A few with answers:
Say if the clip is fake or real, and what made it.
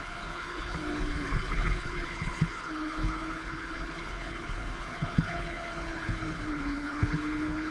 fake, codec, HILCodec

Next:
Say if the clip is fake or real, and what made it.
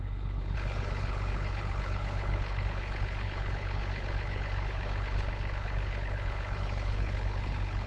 fake, codec, HILCodec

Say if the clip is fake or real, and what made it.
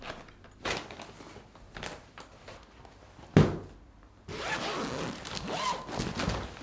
real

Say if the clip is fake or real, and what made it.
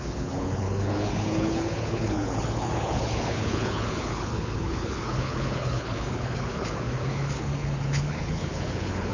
fake, codec, HILCodec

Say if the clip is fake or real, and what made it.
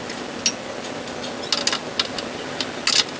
real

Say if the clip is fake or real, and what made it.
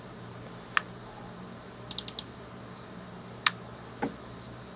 real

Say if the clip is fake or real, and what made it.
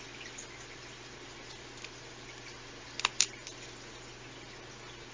real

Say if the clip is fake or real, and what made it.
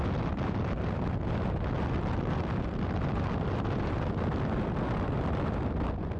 real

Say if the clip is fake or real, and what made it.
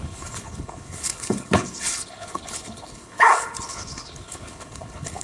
fake, codec, HILCodec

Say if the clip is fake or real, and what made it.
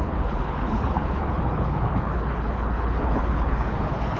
fake, codec, HILCodec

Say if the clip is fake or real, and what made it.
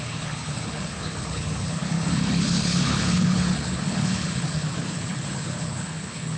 fake, codec, HILCodec